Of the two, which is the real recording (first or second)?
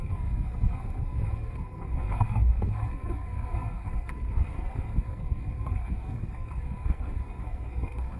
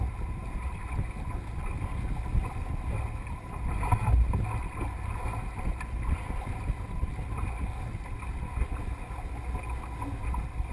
second